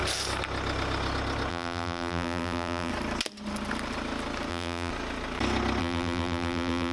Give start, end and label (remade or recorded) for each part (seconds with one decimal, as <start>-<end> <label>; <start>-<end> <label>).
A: 0.0-1.5 recorded; 1.5-2.9 remade; 2.9-4.5 recorded; 4.5-4.9 remade; 4.9-5.8 recorded; 5.8-6.9 remade